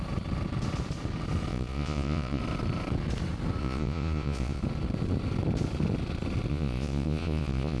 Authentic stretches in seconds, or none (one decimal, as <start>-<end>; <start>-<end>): 0.0-1.5; 2.4-3.6; 4.6-6.5